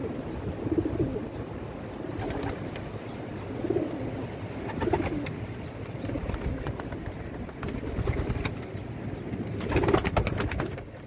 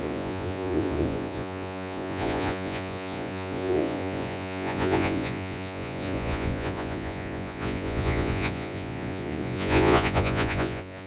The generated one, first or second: second